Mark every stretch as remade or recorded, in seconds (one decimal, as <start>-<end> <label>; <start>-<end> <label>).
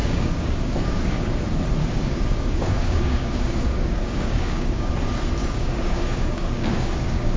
0.0-1.4 remade; 1.4-1.8 recorded; 1.8-4.9 remade; 4.9-5.4 recorded; 5.4-7.4 remade